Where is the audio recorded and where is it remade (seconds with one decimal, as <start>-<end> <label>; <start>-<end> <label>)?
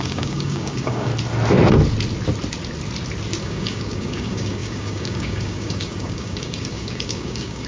0.0-1.1 remade; 1.1-3.4 recorded; 3.4-7.7 remade